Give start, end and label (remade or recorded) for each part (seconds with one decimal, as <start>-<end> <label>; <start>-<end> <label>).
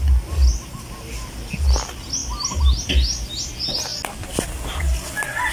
0.0-5.5 recorded